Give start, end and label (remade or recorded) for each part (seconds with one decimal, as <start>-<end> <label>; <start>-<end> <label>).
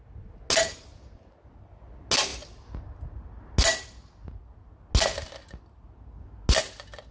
0.0-7.1 recorded